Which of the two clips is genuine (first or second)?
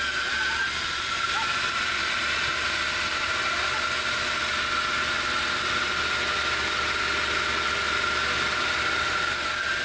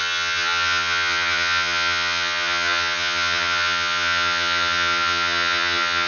first